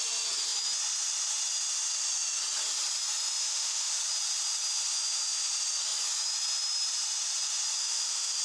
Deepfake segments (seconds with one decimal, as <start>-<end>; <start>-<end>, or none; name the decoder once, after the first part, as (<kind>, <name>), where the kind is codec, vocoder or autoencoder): 3.4-3.9 (autoencoder, DAC-VAE); 7.8-8.4